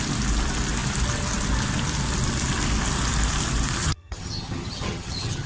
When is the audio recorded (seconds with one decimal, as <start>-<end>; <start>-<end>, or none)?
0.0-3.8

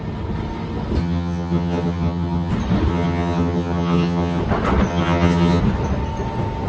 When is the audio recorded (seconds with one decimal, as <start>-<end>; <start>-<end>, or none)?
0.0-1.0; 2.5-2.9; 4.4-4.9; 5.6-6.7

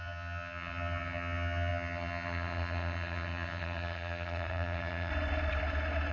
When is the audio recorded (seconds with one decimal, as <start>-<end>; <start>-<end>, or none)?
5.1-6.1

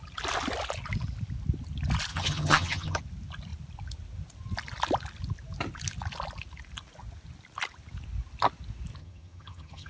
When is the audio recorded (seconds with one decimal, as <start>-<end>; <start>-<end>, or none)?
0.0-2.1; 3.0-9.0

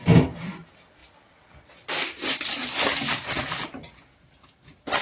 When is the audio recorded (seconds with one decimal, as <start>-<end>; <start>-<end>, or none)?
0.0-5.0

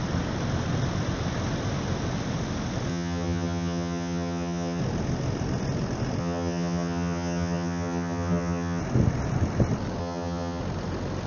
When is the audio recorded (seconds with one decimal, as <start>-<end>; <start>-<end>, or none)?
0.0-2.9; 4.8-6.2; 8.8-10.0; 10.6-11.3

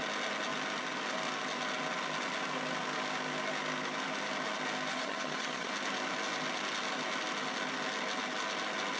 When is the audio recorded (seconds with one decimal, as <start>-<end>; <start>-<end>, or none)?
0.0-4.9; 5.7-9.0